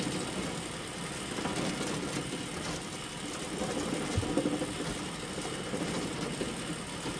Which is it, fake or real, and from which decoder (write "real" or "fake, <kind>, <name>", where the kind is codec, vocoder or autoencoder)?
real